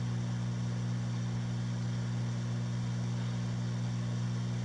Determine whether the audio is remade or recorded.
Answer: recorded